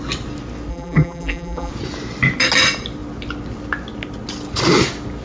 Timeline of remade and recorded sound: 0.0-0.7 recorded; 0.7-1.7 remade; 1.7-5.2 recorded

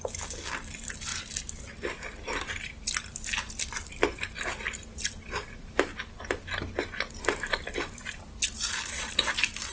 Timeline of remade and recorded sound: 0.0-5.9 remade; 5.9-7.2 recorded; 7.2-9.7 remade